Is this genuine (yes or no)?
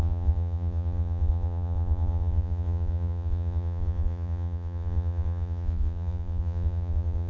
no